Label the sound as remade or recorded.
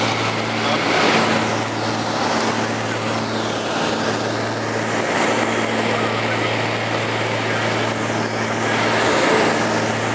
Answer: recorded